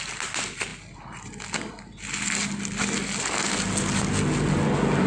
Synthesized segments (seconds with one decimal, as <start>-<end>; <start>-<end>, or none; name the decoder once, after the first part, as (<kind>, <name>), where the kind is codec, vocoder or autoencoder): none